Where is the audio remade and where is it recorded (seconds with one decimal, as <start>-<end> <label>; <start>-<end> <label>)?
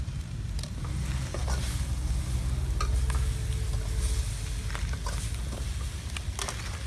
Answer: 0.0-6.9 recorded